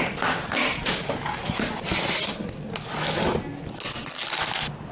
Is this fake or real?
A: real